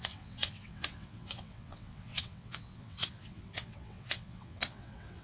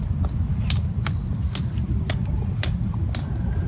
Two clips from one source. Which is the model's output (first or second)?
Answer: first